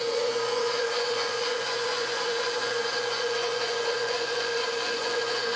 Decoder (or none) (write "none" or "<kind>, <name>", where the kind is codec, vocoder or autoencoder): vocoder, Vocos